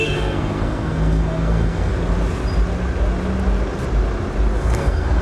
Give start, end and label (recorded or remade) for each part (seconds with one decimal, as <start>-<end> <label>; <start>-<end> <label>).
0.0-1.9 remade; 1.9-4.6 recorded; 4.6-5.2 remade